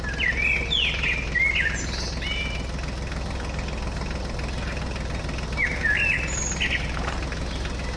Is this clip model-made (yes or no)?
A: no